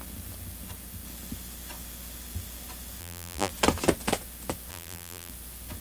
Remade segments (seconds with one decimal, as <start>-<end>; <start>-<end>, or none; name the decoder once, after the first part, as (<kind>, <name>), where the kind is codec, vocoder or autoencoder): 3.0-3.5 (vocoder, BigVGAN v2); 4.7-5.3